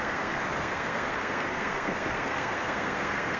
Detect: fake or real fake